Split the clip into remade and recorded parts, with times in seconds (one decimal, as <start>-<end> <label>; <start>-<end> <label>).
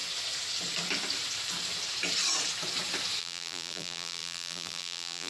0.0-3.2 recorded; 3.2-5.3 remade